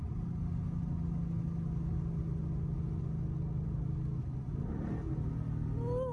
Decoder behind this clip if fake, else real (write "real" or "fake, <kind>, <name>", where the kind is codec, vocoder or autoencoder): real